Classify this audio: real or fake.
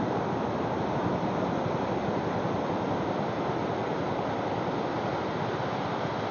real